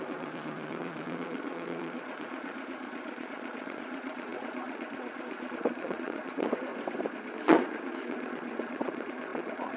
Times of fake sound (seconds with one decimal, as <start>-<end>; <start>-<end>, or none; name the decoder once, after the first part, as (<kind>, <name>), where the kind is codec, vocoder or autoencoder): 0.0-6.7 (vocoder, Vocos); 7.3-9.8